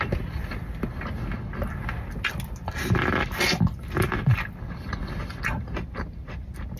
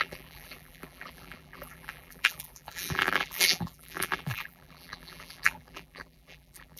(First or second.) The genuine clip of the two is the first